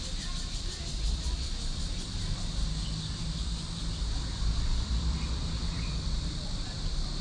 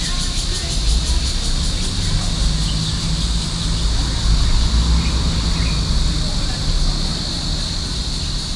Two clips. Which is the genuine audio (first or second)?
second